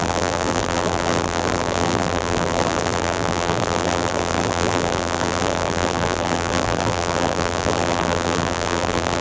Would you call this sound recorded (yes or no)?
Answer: no